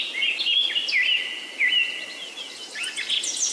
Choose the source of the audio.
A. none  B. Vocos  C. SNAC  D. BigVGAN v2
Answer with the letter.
A